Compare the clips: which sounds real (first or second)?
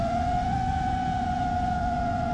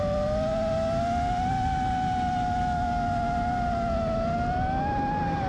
second